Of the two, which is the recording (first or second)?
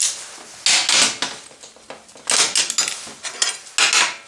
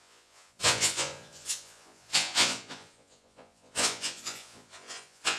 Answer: first